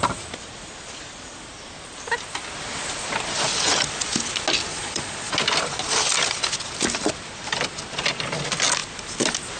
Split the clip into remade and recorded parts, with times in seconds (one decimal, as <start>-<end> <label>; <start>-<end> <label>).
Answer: 0.0-4.7 recorded; 4.7-5.3 remade; 5.3-9.6 recorded